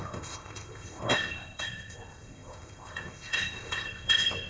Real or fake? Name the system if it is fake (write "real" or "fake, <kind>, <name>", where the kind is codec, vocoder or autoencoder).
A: fake, codec, ZipCodec